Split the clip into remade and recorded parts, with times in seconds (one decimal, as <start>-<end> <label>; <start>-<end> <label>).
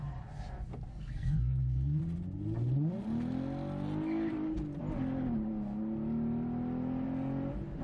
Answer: 0.0-0.9 recorded; 0.9-2.0 remade; 2.0-7.8 recorded